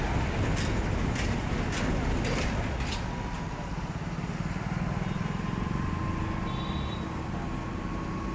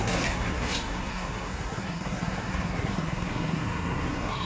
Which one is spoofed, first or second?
second